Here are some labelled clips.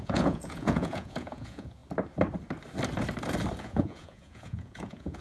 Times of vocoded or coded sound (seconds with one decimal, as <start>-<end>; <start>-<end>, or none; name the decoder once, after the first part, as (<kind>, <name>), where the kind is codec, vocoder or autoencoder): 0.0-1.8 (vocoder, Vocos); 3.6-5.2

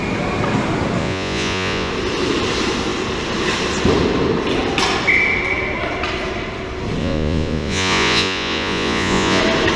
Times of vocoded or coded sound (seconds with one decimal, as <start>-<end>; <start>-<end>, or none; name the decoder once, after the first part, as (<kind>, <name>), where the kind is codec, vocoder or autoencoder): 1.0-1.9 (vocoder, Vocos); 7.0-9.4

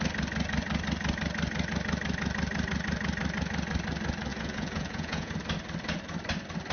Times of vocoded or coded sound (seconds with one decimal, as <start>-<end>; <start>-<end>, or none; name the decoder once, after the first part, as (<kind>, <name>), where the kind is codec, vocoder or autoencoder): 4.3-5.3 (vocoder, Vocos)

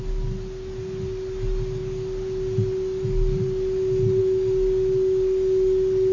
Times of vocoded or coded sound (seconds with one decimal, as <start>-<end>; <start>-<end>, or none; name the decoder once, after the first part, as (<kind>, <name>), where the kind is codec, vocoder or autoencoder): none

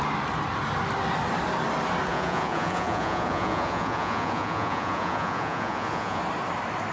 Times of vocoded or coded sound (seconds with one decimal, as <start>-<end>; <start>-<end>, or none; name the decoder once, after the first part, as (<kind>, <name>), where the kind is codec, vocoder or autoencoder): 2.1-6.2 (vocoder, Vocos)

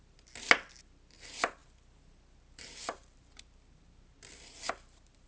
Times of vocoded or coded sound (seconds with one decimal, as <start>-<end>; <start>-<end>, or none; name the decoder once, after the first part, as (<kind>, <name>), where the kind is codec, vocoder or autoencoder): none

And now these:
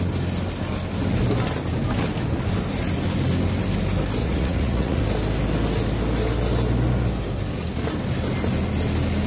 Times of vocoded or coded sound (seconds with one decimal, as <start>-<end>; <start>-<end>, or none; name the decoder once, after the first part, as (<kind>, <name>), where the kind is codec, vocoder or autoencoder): 4.2-5.0 (vocoder, Vocos)